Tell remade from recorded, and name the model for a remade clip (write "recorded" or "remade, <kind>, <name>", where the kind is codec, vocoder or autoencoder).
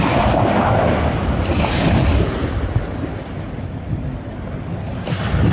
recorded